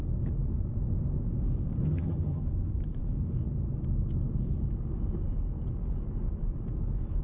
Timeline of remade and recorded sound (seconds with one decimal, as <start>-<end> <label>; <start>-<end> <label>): 0.0-1.8 recorded; 1.8-2.4 remade; 2.4-7.2 recorded